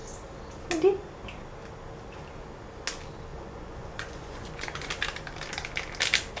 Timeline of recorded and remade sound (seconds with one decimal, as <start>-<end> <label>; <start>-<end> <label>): 0.0-3.3 recorded; 3.3-4.9 remade; 4.9-6.4 recorded